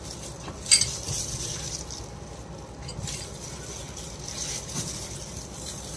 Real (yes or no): no